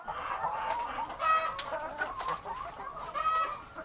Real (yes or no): yes